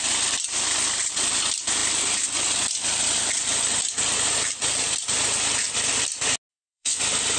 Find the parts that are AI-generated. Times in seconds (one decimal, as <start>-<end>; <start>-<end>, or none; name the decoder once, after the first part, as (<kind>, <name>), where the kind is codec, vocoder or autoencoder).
6.5-7.0 (vocoder, WaveNeXt)